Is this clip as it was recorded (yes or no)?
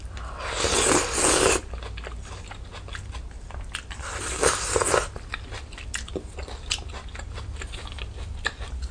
yes